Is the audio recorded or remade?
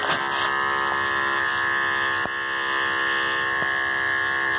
recorded